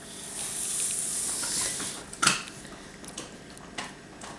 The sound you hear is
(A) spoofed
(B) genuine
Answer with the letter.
B